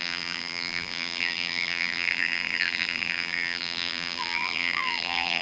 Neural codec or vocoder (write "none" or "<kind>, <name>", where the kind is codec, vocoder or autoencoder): vocoder, BigVGAN v2